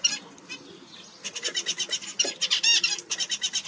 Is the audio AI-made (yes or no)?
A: no